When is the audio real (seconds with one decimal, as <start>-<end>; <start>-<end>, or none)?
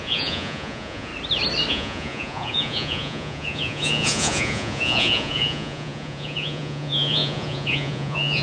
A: 1.1-1.7